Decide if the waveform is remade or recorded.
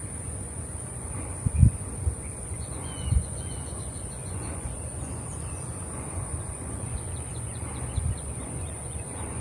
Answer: remade